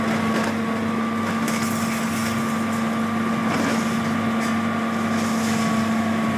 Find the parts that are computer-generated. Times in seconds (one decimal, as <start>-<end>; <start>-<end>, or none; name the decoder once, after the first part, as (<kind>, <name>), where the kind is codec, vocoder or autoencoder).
none